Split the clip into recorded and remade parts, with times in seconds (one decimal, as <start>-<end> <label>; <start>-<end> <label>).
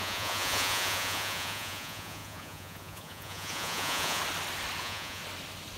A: 0.0-4.2 remade; 4.2-4.8 recorded; 4.8-5.2 remade; 5.2-5.8 recorded